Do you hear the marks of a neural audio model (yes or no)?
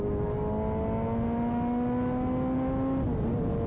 no